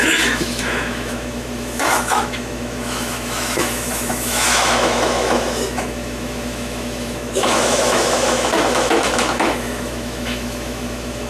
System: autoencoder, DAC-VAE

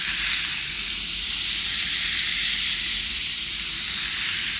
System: none